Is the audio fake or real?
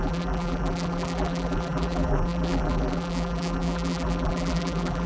fake